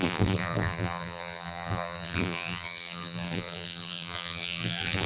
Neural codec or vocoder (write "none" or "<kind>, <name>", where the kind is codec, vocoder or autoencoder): vocoder, BigVGAN v2